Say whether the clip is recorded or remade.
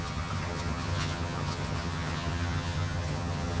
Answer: remade